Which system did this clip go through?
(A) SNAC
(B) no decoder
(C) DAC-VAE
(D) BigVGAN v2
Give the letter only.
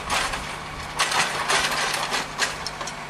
B